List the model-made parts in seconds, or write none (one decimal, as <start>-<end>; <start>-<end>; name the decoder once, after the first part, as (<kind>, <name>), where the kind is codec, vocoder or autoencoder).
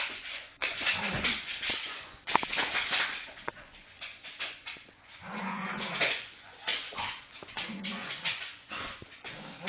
0.0-9.7 (vocoder, Vocos)